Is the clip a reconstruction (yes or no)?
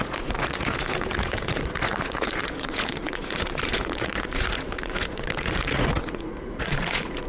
yes